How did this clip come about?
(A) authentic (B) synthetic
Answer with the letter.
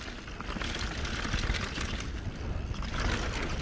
A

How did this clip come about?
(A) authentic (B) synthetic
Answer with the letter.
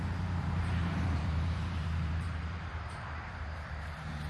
B